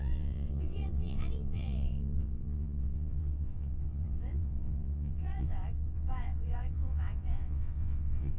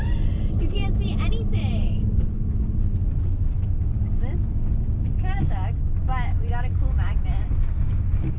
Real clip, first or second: second